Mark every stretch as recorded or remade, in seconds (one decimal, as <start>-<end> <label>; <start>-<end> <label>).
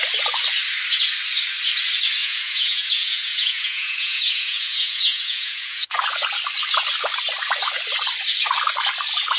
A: 0.0-2.2 recorded; 2.2-6.0 remade; 6.0-9.4 recorded